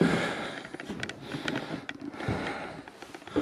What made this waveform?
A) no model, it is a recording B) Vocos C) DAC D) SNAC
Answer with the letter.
A